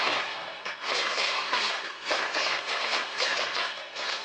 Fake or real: fake